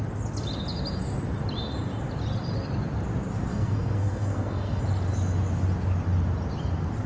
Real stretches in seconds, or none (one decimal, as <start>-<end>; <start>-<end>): 0.0-3.5; 4.8-7.1